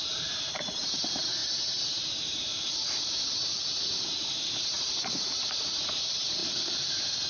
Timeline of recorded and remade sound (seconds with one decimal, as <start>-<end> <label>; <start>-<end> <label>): 0.0-6.4 remade; 6.4-7.3 recorded